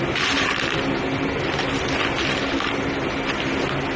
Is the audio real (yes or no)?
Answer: yes